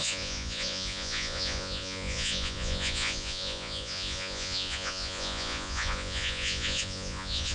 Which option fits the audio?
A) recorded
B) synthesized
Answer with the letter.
B